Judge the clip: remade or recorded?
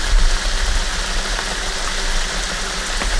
recorded